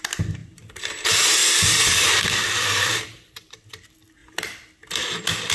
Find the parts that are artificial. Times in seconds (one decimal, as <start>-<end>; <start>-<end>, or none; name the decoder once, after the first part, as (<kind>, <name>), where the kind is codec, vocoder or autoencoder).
0.4-3.7 (vocoder, BigVGAN v2)